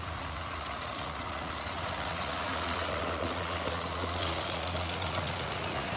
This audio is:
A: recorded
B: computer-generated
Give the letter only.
B